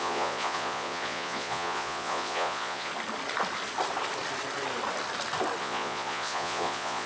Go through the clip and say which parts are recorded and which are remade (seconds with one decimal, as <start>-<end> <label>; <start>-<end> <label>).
0.0-2.9 remade; 2.9-5.6 recorded; 5.6-7.1 remade